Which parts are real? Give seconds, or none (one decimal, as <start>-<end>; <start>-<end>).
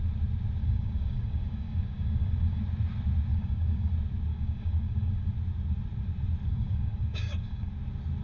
0.0-0.6; 2.6-3.3; 3.9-4.3; 5.3-6.5; 7.7-8.2